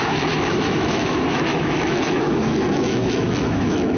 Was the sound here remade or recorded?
remade